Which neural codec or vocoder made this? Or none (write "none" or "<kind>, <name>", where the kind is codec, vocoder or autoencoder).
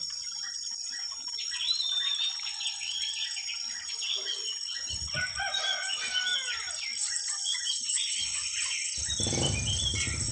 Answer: vocoder, BigVGAN v2